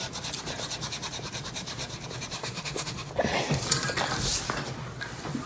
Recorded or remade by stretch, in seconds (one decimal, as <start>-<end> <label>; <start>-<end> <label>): 0.0-2.4 recorded; 2.4-3.1 remade; 3.1-5.5 recorded